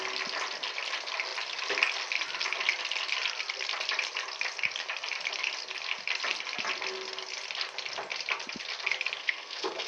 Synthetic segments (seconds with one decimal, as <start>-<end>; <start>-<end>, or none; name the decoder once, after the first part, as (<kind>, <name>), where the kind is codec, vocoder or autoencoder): 9.2-9.9 (codec, SNAC)